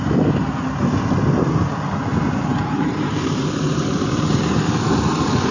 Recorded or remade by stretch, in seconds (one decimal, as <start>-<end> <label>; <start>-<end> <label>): 0.0-2.5 recorded; 2.5-3.4 remade; 3.4-5.5 recorded